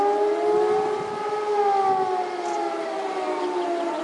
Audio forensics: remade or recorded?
recorded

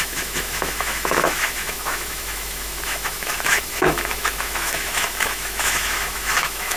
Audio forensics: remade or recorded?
remade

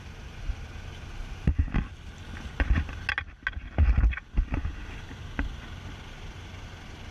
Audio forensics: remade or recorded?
recorded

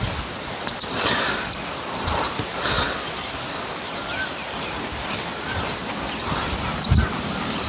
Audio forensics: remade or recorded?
recorded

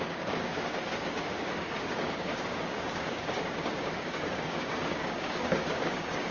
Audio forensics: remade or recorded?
remade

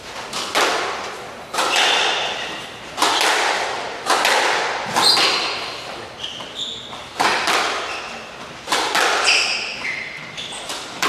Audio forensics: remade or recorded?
recorded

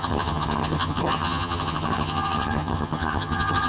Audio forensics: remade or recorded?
remade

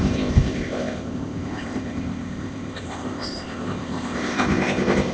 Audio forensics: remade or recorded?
remade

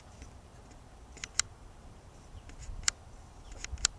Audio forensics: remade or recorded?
remade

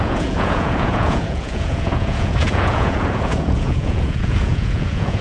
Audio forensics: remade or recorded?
remade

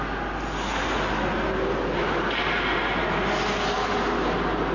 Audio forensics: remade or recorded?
recorded